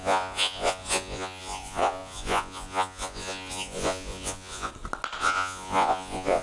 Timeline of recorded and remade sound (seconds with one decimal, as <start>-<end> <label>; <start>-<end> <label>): 0.0-4.7 remade; 4.7-5.2 recorded; 5.2-6.4 remade